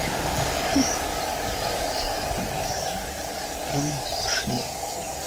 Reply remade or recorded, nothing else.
remade